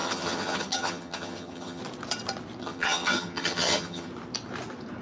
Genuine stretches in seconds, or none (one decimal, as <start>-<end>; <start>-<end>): 1.8-2.6; 4.1-5.0